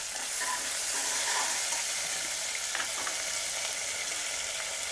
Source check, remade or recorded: recorded